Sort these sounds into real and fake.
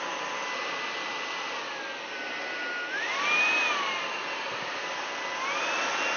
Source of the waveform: real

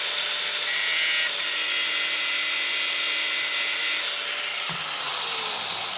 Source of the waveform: real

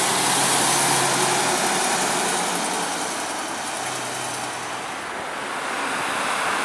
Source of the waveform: real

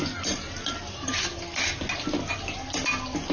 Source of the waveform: real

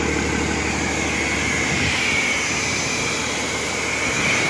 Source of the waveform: real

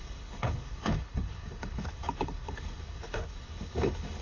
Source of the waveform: fake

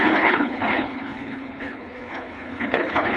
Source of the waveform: fake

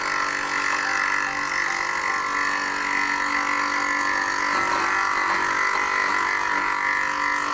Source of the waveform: real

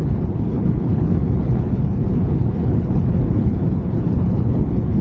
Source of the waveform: fake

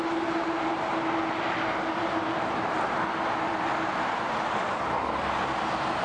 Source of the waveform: real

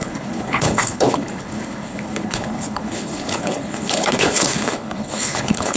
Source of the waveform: fake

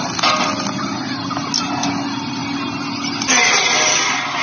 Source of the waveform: real